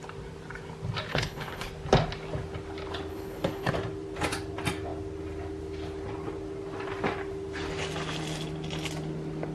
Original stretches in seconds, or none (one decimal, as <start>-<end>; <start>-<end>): 0.0-1.1; 1.7-3.1; 3.7-9.5